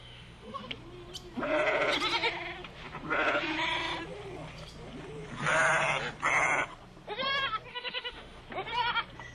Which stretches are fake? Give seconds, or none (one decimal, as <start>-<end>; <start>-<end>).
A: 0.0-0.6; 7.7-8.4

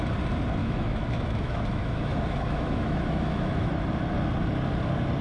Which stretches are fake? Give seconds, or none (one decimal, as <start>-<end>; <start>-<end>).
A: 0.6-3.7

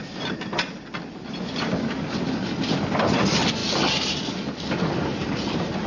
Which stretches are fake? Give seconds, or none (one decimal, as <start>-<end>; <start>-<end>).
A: none